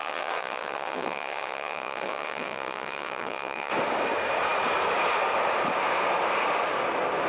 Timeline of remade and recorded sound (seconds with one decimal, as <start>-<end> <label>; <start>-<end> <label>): 0.0-3.7 remade; 3.7-7.3 recorded